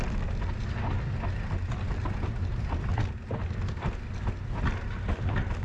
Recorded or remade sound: recorded